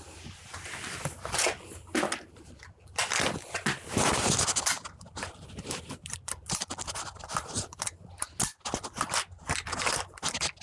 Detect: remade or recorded recorded